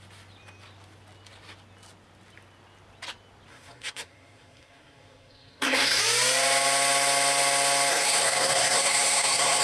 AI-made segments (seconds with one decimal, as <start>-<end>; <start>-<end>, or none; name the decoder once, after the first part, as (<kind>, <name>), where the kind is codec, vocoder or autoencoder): 3.5-6.0 (codec, SNAC); 7.9-9.6